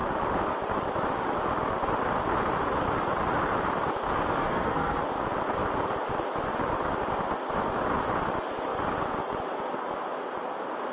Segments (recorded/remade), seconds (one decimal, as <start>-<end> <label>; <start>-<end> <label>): 0.0-4.4 recorded; 4.4-5.0 remade; 5.0-10.9 recorded